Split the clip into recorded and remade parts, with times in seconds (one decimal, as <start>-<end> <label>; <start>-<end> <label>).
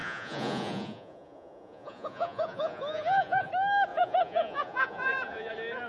0.0-3.5 remade; 3.5-3.9 recorded; 3.9-5.5 remade; 5.5-5.9 recorded